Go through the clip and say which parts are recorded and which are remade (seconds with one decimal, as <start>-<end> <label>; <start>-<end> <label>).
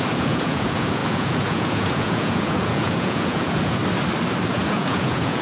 0.0-3.8 remade; 3.8-4.5 recorded; 4.5-5.4 remade